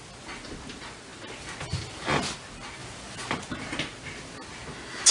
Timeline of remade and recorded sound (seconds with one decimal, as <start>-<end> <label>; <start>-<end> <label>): 0.0-5.1 recorded